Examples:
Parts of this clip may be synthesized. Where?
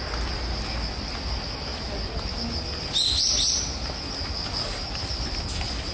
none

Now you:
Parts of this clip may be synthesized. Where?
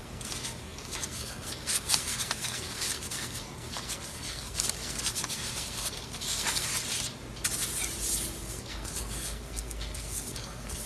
0.0-6.7 (codec, SNAC); 8.4-10.9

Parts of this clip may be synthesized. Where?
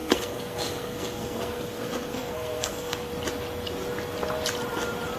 0.0-3.1 (codec, SNAC)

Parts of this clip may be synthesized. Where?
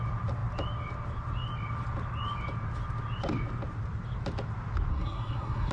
4.9-5.7 (codec, SNAC)